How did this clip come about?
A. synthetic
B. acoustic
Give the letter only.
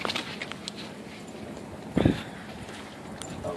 B